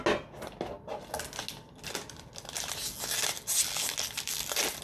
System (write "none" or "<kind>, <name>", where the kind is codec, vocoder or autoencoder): none